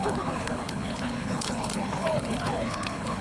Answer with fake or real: fake